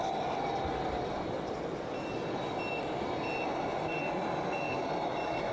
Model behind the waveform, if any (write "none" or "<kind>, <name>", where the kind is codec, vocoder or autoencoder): none